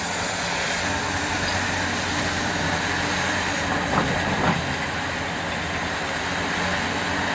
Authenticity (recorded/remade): recorded